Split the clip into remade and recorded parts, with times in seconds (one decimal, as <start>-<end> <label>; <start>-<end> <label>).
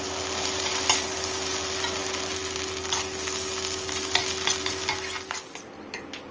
0.0-6.3 recorded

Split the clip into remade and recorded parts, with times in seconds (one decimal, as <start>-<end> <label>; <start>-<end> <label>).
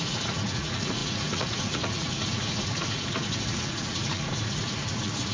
0.0-5.3 remade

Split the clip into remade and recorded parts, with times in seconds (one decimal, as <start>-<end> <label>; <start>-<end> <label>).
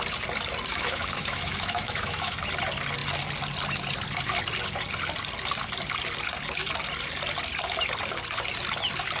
0.0-0.7 recorded; 0.7-2.3 remade; 2.3-9.2 recorded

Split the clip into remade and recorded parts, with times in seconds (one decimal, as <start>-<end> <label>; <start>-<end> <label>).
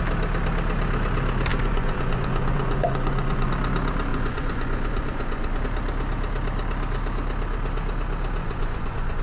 0.0-1.5 recorded; 1.5-3.5 remade; 3.5-4.1 recorded; 4.1-5.6 remade; 5.6-8.4 recorded; 8.4-9.2 remade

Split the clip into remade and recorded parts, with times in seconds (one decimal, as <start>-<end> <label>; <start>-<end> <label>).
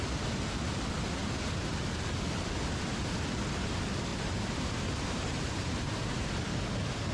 0.0-4.1 recorded; 4.1-6.3 remade; 6.3-7.1 recorded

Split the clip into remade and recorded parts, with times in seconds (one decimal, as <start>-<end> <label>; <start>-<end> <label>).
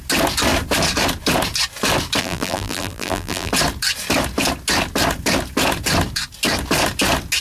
0.0-2.2 recorded; 2.2-3.5 remade; 3.5-7.4 recorded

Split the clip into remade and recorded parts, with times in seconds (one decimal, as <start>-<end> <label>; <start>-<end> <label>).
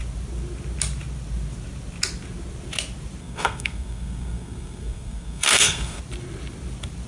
0.0-3.2 recorded; 3.2-6.0 remade; 6.0-7.1 recorded